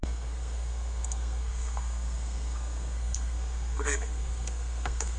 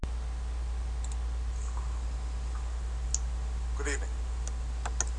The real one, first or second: second